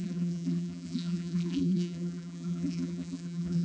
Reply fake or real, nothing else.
fake